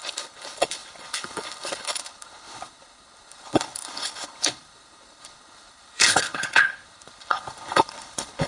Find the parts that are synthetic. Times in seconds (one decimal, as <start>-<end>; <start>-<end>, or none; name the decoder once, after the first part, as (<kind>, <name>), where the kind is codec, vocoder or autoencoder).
0.0-8.5 (codec, HILCodec)